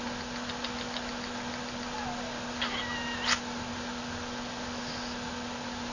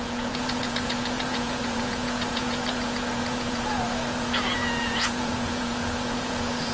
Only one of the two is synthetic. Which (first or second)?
second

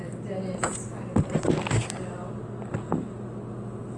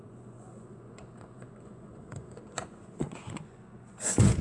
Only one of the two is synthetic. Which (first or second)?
second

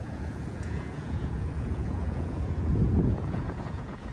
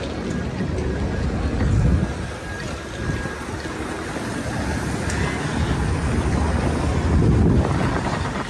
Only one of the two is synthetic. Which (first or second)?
first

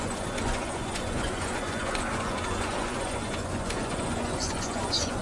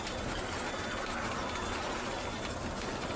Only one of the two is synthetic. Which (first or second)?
first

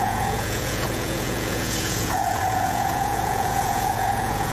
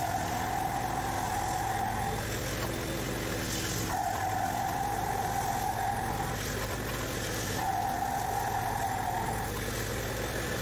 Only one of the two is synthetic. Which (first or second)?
first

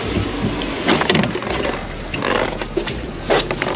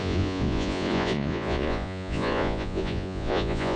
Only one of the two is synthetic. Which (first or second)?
second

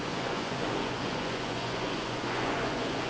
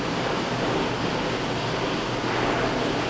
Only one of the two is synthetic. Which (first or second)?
first